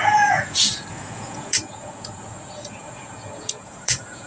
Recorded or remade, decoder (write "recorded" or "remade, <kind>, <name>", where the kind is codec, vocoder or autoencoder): remade, vocoder, Vocos